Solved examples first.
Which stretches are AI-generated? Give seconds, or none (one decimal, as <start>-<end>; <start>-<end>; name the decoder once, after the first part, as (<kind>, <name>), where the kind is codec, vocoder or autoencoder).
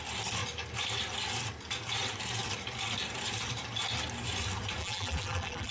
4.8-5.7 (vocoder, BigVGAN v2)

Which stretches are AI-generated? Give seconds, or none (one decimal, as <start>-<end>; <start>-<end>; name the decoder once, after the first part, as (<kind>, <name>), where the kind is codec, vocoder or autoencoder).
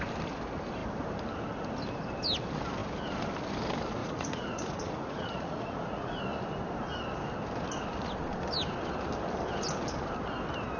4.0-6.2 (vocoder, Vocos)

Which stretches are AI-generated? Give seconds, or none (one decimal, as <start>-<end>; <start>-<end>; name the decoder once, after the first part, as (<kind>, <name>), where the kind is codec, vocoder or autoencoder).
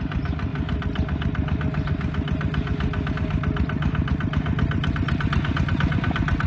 none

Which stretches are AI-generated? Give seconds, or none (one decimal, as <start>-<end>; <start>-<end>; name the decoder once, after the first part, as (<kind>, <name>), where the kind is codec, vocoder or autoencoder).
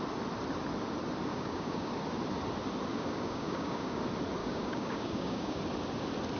1.3-1.9 (codec, DAC); 2.9-4.0; 4.4-5.6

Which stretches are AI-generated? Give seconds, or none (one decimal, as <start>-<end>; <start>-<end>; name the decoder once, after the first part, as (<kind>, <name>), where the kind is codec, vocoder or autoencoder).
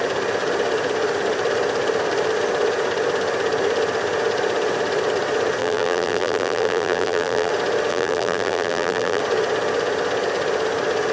5.6-7.5 (vocoder, BigVGAN v2); 7.9-9.2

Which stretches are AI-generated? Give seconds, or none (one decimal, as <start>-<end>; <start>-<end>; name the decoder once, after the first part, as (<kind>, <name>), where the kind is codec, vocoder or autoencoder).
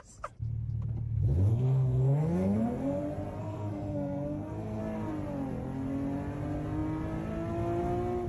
1.5-3.0 (codec, SNAC); 3.4-4.8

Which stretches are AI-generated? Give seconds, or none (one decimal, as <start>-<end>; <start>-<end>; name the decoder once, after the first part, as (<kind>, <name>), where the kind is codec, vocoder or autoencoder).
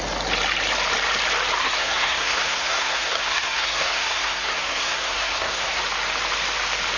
1.6-5.8 (codec, SNAC)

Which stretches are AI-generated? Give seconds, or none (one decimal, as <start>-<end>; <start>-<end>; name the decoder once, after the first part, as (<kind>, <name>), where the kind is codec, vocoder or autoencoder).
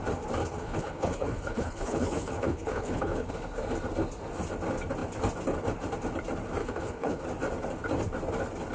0.4-3.3 (codec, HILCodec); 6.6-7.2